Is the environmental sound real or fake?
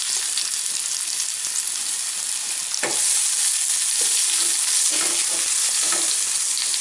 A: real